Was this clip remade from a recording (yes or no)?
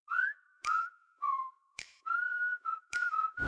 yes